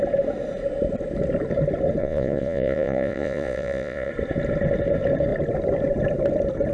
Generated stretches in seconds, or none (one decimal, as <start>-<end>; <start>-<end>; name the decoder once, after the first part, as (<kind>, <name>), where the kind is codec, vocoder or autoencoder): 2.0-4.1 (vocoder, Vocos)